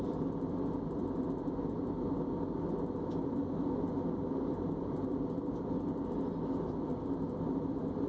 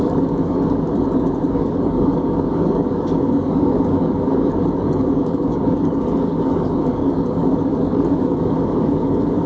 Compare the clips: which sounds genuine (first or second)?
first